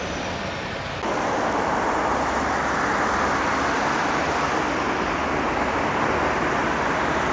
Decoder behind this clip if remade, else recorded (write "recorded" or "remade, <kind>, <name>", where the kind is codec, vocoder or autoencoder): recorded